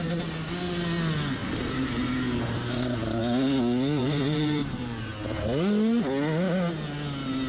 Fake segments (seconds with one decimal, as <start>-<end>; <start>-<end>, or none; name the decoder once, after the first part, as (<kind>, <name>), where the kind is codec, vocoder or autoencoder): 1.4-3.2 (vocoder, BigVGAN v2); 4.0-5.1